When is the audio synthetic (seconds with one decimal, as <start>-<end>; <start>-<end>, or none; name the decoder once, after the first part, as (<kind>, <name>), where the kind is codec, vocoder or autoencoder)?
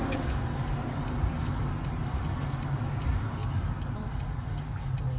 none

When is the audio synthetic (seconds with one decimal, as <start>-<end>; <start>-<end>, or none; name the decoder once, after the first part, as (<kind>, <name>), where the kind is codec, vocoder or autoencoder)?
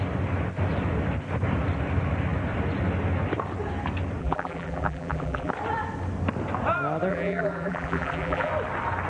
4.2-5.5 (vocoder, BigVGAN v2); 7.1-8.5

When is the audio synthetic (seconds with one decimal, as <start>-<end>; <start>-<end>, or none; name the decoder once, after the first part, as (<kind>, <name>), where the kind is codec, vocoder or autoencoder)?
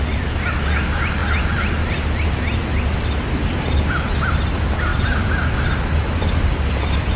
none